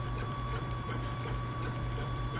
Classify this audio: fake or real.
fake